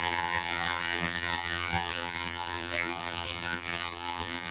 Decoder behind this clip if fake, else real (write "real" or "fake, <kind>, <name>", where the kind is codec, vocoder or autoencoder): fake, vocoder, BigVGAN v2